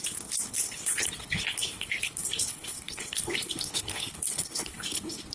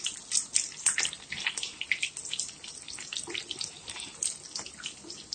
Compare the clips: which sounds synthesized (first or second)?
first